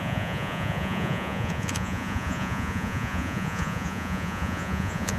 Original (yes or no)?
no